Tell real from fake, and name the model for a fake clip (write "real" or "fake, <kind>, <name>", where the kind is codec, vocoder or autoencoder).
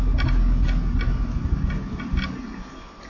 real